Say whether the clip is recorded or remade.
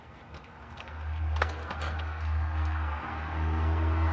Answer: remade